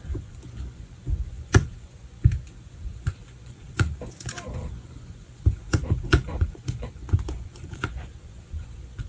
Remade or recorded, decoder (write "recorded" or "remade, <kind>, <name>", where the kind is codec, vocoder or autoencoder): remade, vocoder, Vocos